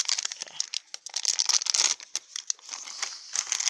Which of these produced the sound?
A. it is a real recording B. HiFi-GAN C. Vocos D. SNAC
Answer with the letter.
A